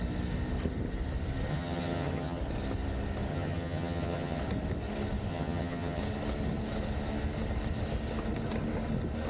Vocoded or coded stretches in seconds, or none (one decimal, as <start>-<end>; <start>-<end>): 1.5-2.4; 3.3-4.4; 5.3-6.0

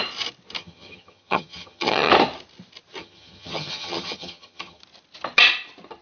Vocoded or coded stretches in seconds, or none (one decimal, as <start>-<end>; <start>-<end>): 0.6-2.1; 3.0-4.8

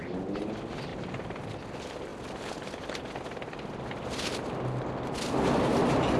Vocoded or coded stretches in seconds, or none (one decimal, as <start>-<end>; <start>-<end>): 0.9-1.4